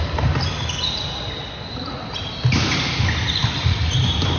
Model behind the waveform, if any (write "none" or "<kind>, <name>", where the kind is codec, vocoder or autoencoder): none